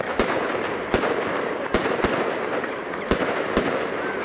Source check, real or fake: real